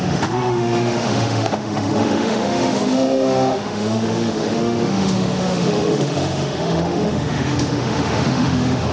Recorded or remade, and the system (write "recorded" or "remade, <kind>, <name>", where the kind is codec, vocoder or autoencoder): remade, autoencoder, DAC-VAE